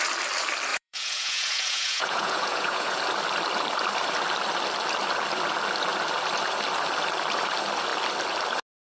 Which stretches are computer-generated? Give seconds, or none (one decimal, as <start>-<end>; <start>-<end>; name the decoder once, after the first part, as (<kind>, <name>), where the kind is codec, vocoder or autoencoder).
0.7-3.0 (vocoder, Vocos)